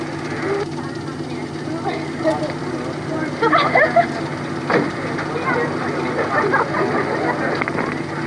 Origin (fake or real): real